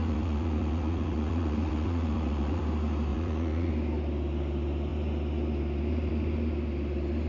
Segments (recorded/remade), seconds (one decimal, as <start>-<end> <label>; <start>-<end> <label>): 0.0-2.6 remade; 2.6-3.1 recorded; 3.1-3.7 remade; 3.7-7.3 recorded